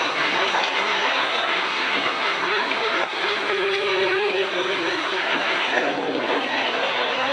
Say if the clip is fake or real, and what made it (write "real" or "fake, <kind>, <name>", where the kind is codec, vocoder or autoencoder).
fake, codec, SNAC